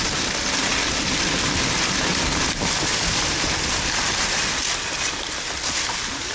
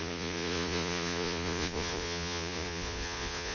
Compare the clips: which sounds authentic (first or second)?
first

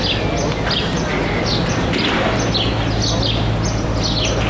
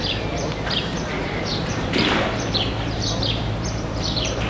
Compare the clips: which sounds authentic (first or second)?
first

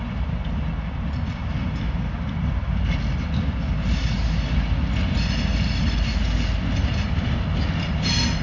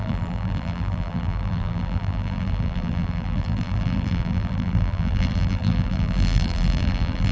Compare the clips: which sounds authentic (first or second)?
first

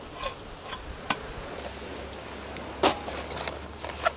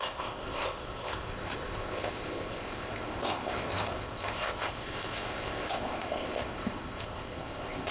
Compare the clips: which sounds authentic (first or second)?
first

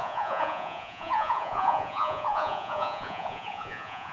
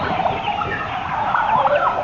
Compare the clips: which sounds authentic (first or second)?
second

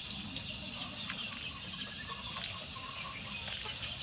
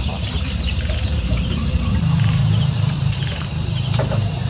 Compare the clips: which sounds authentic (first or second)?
first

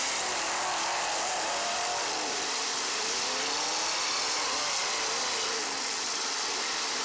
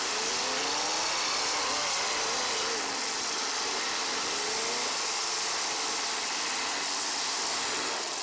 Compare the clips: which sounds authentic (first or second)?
second